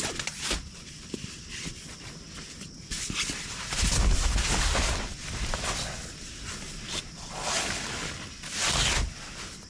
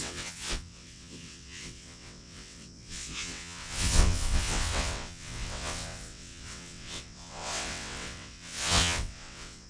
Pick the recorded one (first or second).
first